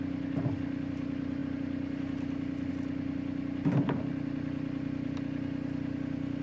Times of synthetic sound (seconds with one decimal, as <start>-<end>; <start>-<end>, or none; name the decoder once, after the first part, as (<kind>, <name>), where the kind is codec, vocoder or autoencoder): none